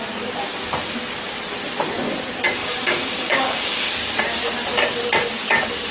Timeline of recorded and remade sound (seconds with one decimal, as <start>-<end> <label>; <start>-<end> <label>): 0.0-2.6 recorded; 2.6-3.9 remade; 3.9-5.9 recorded